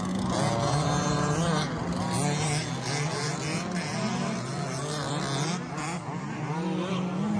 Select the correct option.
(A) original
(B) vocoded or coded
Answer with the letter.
A